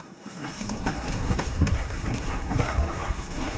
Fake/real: fake